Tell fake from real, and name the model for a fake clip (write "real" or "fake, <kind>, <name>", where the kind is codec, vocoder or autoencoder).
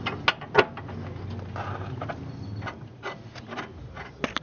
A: real